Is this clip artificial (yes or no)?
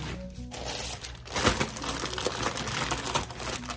no